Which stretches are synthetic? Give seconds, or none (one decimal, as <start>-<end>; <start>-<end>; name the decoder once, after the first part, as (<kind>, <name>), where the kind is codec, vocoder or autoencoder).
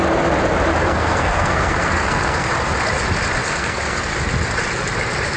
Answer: 0.8-2.5 (codec, SNAC); 3.4-4.1